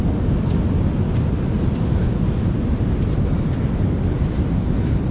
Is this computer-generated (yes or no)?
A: no